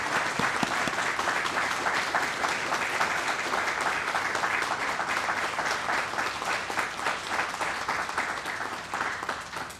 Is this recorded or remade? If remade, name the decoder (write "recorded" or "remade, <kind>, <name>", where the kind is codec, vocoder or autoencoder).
recorded